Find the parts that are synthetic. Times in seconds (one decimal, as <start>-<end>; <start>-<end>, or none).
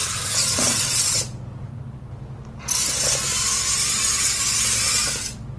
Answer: 0.0-1.2